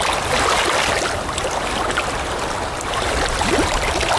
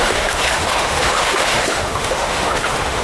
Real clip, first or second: first